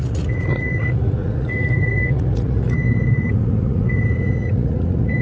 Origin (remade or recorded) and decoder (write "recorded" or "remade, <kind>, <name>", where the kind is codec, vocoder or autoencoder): remade, vocoder, Vocos